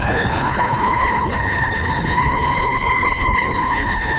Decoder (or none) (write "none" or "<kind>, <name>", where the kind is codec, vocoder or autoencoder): codec, HILCodec